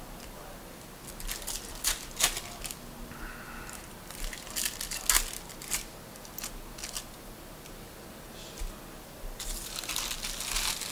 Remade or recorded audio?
recorded